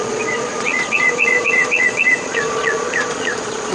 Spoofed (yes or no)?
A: yes